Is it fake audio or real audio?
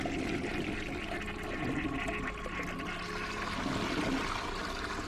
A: real